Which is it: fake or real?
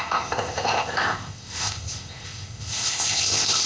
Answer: fake